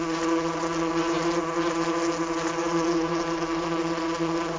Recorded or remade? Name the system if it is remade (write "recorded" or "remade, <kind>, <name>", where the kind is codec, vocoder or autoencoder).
recorded